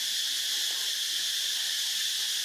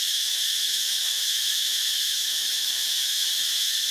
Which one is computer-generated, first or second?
second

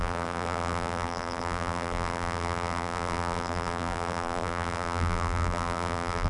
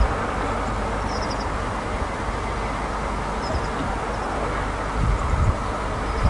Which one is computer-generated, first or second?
first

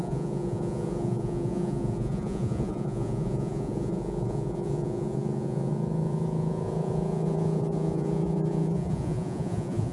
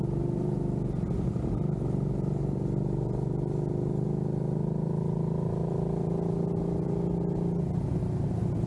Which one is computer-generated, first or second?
first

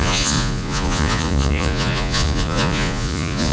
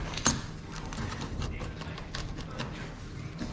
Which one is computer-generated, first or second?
first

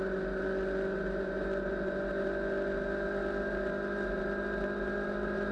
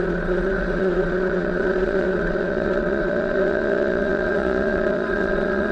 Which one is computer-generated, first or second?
second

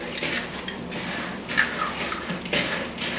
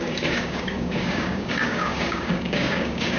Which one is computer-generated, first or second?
second